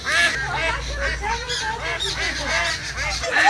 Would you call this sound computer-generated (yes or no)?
no